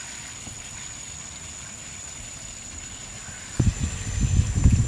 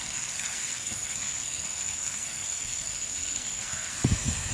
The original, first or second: first